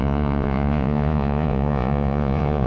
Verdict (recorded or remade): remade